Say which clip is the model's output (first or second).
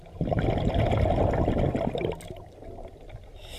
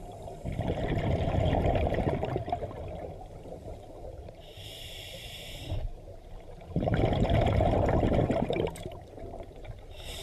second